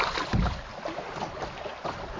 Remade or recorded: recorded